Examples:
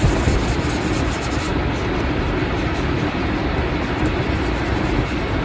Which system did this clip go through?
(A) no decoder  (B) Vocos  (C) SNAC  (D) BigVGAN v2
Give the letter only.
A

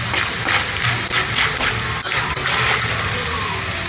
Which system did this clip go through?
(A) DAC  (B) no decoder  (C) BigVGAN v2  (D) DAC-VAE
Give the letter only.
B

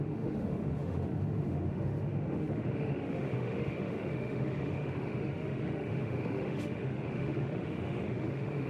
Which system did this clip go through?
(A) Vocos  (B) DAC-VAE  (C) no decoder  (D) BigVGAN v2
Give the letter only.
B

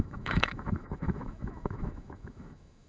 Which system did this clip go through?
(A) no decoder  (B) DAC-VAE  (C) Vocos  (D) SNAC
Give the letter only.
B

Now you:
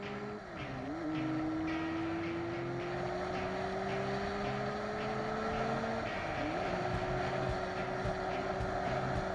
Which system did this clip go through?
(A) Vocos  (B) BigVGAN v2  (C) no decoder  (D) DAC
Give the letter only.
C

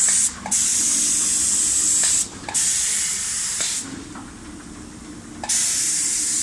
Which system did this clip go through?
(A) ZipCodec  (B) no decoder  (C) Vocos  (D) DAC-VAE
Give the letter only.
B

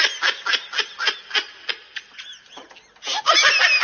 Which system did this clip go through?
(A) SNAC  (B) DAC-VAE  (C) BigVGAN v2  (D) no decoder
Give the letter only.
D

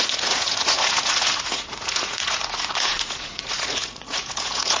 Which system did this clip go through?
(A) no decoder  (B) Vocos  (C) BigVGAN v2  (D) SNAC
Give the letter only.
B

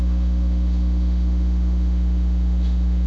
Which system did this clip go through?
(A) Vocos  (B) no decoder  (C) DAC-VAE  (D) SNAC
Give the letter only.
C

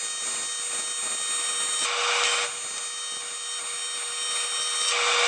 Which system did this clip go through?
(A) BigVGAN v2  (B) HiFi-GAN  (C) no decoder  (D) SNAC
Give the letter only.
C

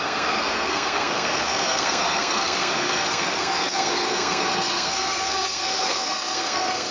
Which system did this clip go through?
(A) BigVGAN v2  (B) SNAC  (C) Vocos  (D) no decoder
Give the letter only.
B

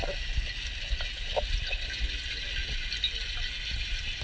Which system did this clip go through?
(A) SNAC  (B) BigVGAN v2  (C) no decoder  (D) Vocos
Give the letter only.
C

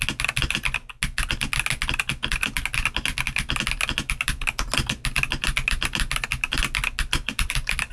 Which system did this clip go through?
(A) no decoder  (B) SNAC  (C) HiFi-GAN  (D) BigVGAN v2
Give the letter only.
A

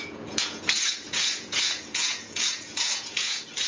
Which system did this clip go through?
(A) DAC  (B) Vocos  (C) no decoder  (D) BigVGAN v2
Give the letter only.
B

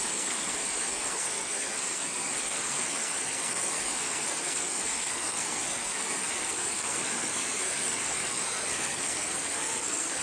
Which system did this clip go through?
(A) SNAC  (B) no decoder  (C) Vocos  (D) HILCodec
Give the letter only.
A